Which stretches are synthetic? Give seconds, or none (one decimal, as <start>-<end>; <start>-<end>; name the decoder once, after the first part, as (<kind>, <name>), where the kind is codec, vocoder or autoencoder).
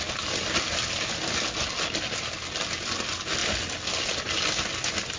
none